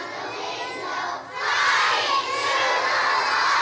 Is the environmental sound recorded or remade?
recorded